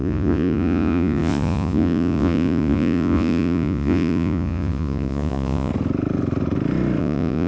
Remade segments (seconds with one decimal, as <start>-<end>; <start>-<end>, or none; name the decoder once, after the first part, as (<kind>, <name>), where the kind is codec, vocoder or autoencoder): 0.0-5.7 (vocoder, Vocos); 7.0-7.5